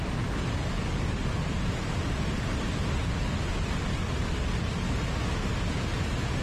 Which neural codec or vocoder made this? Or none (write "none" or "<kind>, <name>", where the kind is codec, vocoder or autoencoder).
none